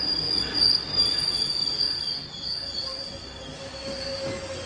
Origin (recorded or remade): recorded